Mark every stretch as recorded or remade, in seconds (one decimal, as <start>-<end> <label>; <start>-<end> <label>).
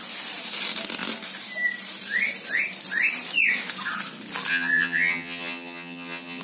0.0-4.5 recorded; 4.5-6.4 remade